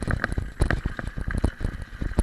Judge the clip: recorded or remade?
recorded